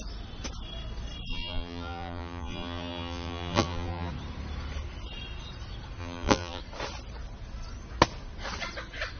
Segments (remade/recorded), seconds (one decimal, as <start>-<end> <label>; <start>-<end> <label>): 0.0-1.3 recorded; 1.3-4.1 remade; 4.1-6.0 recorded; 6.0-6.6 remade; 6.6-9.2 recorded